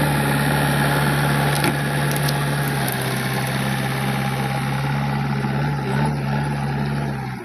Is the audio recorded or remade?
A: recorded